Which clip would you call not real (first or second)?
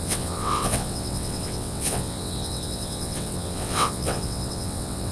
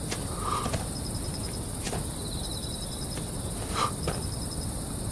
first